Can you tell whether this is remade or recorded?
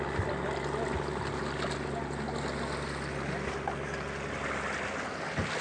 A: recorded